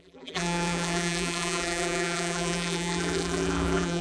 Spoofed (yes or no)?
yes